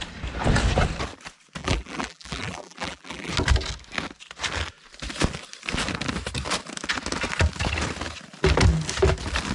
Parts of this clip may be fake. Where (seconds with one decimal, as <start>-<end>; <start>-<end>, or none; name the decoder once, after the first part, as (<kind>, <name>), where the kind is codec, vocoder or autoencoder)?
1.6-3.3 (vocoder, BigVGAN v2)